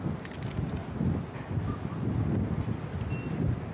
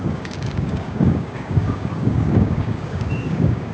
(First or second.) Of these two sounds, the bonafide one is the first